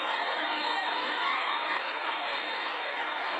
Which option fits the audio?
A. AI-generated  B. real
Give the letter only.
A